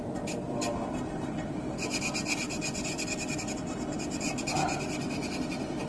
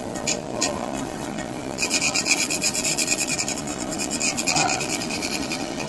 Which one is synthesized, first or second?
second